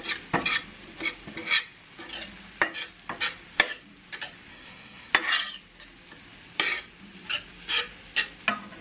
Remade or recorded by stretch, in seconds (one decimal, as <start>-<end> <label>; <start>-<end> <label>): 0.0-4.5 recorded; 4.5-5.1 remade; 5.1-8.8 recorded